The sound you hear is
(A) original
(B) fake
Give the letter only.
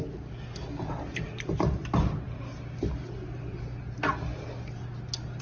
A